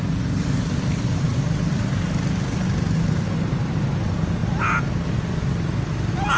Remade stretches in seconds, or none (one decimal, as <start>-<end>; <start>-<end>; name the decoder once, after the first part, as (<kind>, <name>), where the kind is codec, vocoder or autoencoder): 1.3-3.8 (vocoder, BigVGAN v2)